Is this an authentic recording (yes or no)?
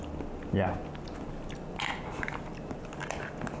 yes